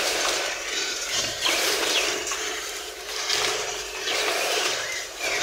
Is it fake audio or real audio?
fake